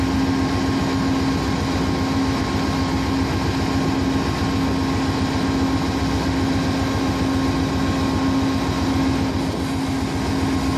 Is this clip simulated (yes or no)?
no